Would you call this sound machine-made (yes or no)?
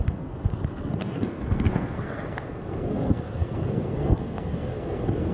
yes